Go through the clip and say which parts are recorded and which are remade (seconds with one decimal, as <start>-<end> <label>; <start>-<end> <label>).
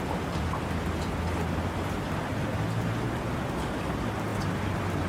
0.0-5.1 recorded